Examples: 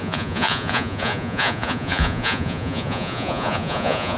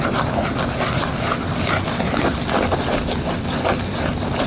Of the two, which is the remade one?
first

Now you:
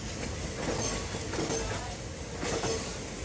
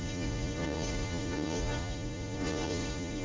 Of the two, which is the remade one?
second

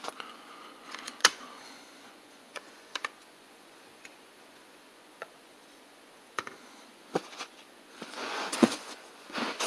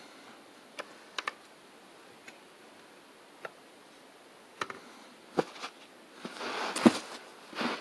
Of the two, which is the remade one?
first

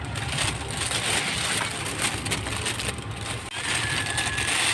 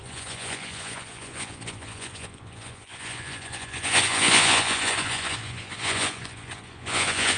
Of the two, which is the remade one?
second